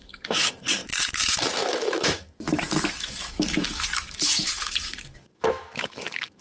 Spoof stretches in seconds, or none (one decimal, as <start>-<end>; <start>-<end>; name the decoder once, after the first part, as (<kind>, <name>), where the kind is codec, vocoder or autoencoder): 0.0-6.4 (autoencoder, DAC-VAE)